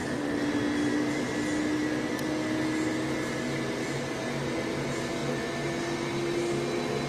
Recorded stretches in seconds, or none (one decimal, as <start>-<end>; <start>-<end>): 0.0-7.1